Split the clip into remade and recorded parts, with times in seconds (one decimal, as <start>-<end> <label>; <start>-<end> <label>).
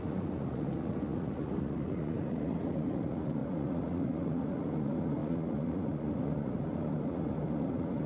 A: 0.0-8.1 remade